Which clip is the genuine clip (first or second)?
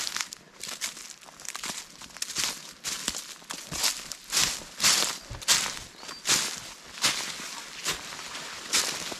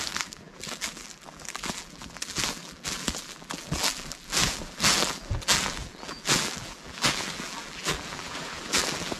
first